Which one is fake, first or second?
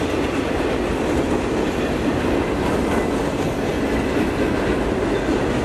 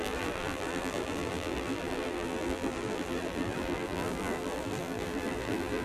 second